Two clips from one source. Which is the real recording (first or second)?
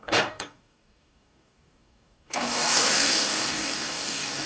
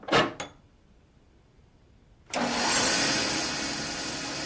second